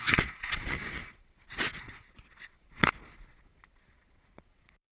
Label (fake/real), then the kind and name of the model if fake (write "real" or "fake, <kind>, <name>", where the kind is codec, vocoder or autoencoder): fake, vocoder, Vocos